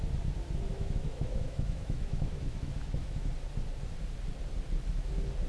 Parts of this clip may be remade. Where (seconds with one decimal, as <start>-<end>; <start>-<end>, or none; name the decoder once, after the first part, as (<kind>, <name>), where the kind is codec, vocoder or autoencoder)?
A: 0.7-3.3 (autoencoder, DAC-VAE)